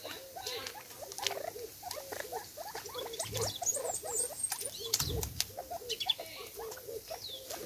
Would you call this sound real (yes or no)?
yes